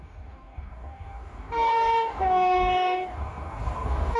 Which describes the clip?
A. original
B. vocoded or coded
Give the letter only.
B